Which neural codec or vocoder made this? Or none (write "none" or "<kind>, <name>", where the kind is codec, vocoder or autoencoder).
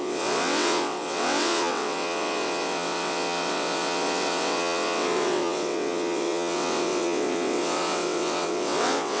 vocoder, WaveNeXt